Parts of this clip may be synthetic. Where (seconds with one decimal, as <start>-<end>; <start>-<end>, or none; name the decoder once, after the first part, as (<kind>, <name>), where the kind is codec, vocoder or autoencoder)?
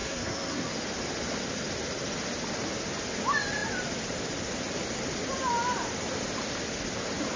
0.0-0.7 (codec, SNAC)